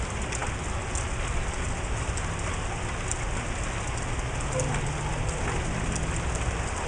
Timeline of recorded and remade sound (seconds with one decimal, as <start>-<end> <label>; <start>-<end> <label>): 0.0-6.9 recorded